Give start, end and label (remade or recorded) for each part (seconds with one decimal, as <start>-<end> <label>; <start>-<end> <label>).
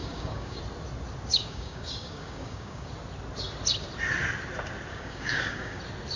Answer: 0.0-0.6 remade; 0.6-1.3 recorded; 1.3-2.9 remade; 2.9-4.9 recorded; 4.9-5.8 remade; 5.8-6.2 recorded